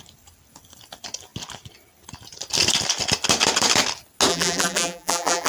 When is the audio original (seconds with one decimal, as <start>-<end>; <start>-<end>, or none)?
0.0-4.3